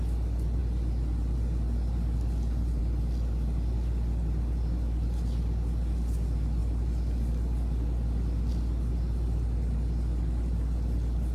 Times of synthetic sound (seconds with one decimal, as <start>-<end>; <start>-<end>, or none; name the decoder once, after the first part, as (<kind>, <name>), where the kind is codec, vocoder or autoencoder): none